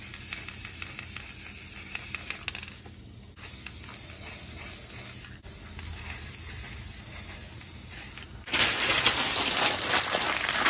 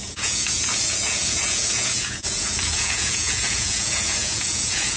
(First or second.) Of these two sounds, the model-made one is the second